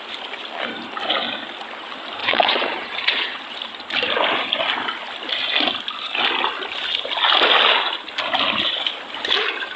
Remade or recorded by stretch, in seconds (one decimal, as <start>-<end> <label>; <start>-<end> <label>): 0.0-2.2 recorded; 2.2-3.4 remade; 3.4-9.8 recorded